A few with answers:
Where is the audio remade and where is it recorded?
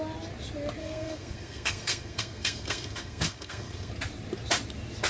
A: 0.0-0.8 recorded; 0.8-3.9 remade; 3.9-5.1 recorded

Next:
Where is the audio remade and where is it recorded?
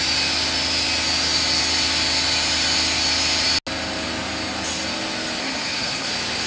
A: 0.0-5.4 recorded; 5.4-6.1 remade; 6.1-6.5 recorded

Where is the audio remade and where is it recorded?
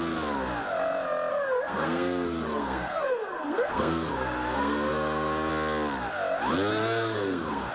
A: 0.0-1.3 recorded; 1.3-5.5 remade; 5.5-6.7 recorded; 6.7-7.7 remade